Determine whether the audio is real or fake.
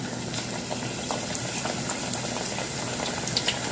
real